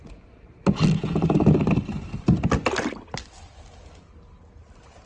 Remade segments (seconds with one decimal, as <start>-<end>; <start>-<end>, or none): none